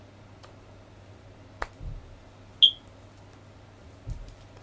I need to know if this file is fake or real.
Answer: real